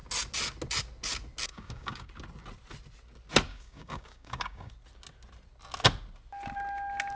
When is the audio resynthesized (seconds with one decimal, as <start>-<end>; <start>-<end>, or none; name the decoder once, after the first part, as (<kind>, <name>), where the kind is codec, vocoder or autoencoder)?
1.5-2.1 (codec, DAC); 3.5-4.7